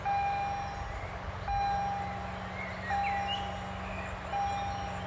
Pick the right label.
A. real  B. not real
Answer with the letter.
A